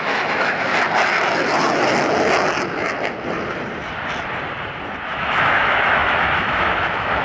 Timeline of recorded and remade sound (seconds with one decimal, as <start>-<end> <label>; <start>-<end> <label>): 0.0-0.7 remade; 0.7-5.0 recorded; 5.0-7.2 remade